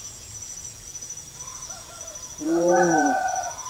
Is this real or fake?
fake